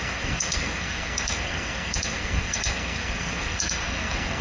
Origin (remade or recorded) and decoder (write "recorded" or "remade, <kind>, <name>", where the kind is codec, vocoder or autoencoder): remade, codec, SNAC